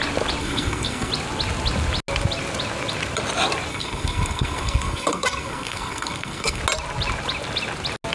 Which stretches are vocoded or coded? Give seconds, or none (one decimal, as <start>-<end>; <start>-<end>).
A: 0.4-1.1; 3.7-6.6